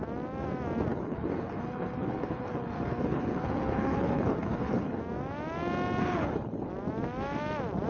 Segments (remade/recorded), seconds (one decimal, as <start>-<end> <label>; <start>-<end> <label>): 0.0-0.9 recorded; 0.9-5.0 remade; 5.0-6.0 recorded; 6.0-6.7 remade; 6.7-7.9 recorded